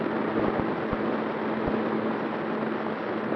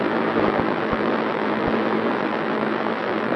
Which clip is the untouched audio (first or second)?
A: first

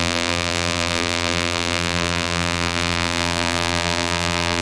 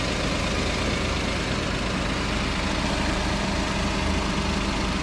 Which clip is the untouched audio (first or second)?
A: second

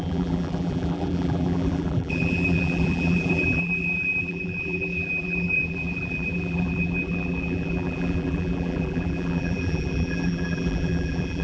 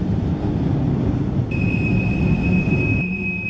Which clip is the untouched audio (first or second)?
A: second